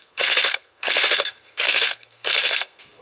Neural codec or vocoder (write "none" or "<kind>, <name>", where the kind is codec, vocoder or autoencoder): codec, SNAC